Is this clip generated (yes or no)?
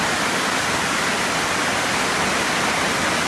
no